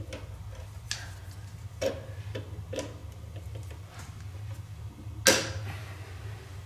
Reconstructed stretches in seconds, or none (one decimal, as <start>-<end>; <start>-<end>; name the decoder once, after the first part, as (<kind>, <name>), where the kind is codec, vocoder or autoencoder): none